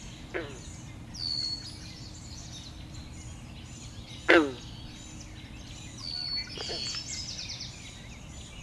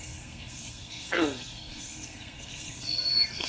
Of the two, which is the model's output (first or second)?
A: second